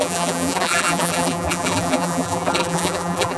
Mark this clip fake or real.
fake